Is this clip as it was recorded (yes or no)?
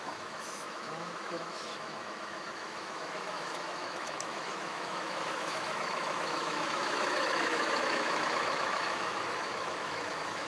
no